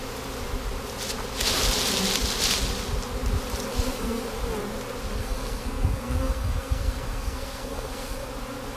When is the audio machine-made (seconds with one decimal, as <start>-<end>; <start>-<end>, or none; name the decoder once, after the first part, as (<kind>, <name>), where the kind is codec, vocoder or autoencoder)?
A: 3.7-4.2 (codec, SNAC); 5.2-8.3